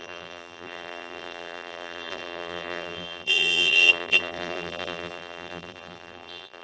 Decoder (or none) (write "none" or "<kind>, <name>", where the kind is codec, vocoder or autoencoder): vocoder, BigVGAN v2